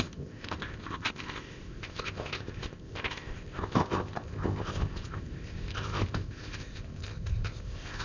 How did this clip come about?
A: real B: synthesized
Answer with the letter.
B